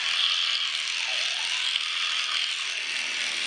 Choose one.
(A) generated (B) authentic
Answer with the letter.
B